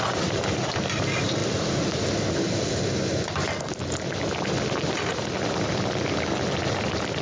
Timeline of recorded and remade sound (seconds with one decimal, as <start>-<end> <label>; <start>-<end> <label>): 0.0-7.2 recorded